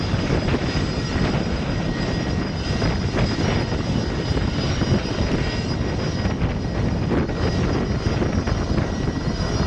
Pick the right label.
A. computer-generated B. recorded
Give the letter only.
B